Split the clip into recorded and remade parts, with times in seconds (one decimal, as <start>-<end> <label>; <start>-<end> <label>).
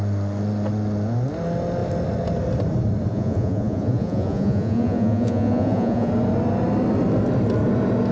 0.0-3.1 recorded; 3.1-6.1 remade; 6.1-8.1 recorded